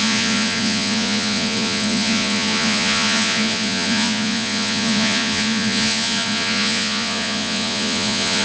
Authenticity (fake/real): fake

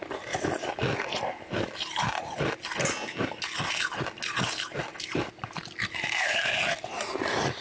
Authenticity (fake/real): real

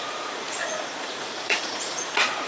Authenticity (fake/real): fake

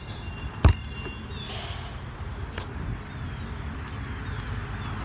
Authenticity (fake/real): real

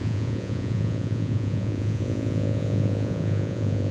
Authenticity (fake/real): fake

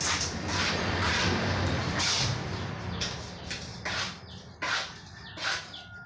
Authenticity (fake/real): real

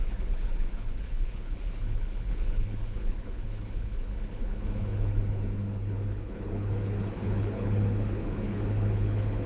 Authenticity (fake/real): fake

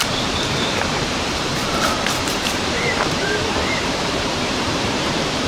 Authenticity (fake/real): fake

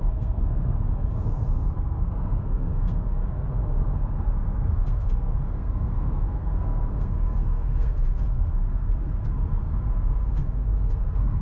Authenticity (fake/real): fake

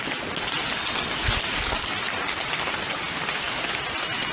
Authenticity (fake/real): real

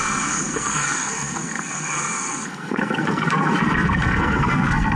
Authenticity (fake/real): fake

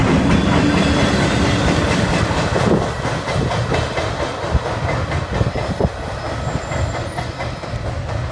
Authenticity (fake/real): real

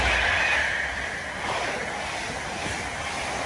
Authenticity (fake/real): real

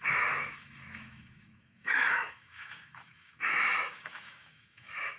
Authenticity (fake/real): fake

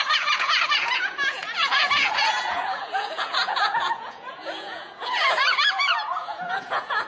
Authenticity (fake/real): fake